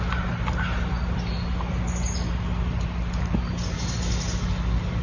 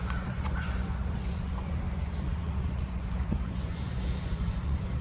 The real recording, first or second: first